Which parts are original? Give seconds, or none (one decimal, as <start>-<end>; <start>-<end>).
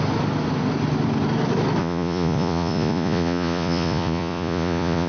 0.0-1.8